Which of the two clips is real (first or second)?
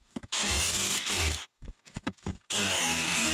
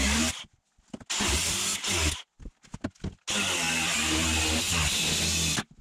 second